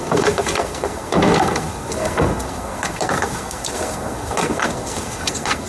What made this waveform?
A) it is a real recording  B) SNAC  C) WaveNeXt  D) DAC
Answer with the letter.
B